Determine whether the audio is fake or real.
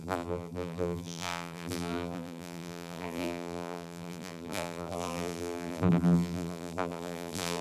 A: fake